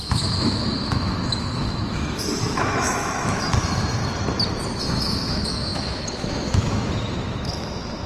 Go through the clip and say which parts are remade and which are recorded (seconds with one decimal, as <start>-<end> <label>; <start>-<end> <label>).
0.0-4.0 remade; 4.0-4.8 recorded; 4.8-8.1 remade